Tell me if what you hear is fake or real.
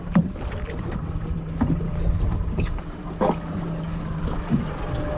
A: real